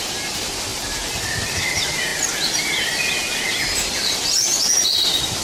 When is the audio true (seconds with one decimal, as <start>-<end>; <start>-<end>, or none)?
0.0-5.4